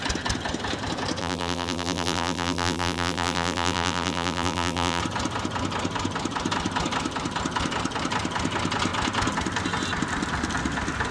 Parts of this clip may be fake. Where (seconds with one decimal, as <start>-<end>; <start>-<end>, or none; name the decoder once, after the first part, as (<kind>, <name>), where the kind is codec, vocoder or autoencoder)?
1.2-5.0 (vocoder, BigVGAN v2)